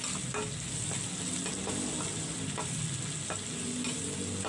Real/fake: real